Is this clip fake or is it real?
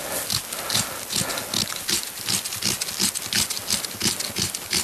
real